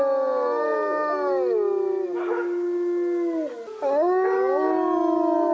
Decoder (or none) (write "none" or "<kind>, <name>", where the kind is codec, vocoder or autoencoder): none